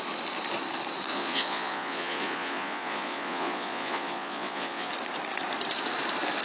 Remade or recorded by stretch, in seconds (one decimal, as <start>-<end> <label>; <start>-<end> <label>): 0.0-1.1 recorded; 1.1-4.9 remade; 4.9-6.4 recorded

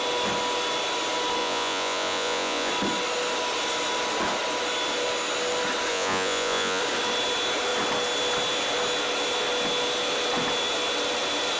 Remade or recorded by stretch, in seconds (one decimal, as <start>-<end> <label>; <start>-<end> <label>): 0.0-1.4 recorded; 1.4-2.7 remade; 2.7-5.9 recorded; 5.9-6.8 remade; 6.8-11.6 recorded

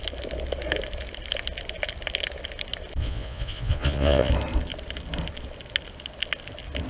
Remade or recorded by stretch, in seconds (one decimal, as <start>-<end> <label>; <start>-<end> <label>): 0.0-3.0 recorded; 3.0-4.3 remade; 4.3-6.9 recorded

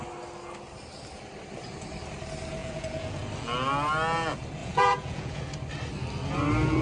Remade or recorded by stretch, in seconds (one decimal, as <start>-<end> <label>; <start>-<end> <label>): 0.0-2.6 recorded; 2.6-3.2 remade; 3.2-4.6 recorded; 4.6-5.4 remade; 5.4-6.8 recorded

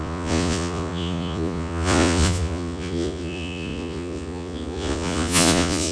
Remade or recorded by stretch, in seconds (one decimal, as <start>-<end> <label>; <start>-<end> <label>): 0.0-5.9 remade